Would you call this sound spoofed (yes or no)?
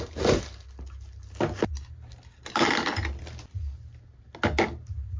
no